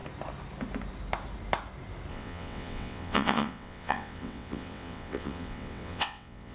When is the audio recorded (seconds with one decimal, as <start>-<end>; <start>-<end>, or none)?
0.0-2.1